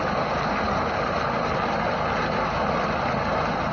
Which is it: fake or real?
real